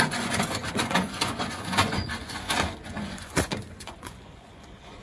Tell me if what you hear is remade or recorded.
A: remade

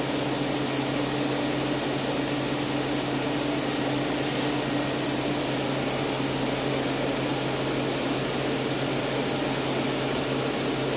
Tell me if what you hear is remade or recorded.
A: recorded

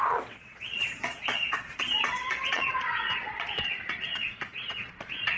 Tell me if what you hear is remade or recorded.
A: remade